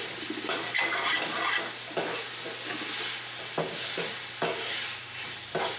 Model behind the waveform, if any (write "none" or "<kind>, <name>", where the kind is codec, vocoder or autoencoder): none